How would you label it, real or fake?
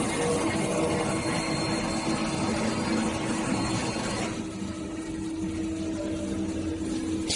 real